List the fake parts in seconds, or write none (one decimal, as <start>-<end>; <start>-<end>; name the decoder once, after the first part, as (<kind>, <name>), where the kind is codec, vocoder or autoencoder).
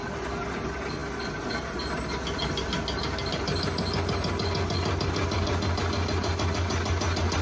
none